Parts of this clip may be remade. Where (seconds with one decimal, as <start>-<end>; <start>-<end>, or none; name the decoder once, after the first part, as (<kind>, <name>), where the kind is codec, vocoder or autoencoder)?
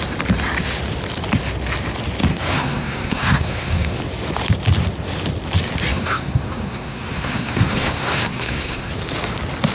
2.3-4.0 (codec, SNAC); 5.9-8.9